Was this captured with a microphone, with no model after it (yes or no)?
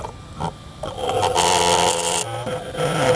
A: yes